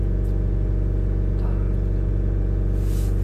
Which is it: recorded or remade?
recorded